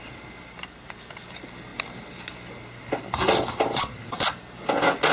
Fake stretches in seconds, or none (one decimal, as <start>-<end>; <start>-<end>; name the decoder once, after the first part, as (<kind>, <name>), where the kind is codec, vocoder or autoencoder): none